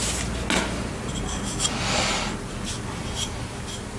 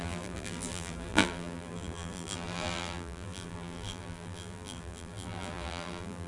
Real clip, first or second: first